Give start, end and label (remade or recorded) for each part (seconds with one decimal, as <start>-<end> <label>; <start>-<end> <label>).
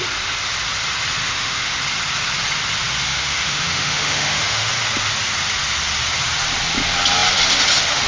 0.0-1.2 recorded; 1.2-1.8 remade; 1.8-3.1 recorded; 3.1-4.7 remade; 4.7-8.1 recorded